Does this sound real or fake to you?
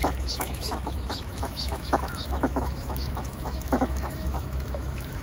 fake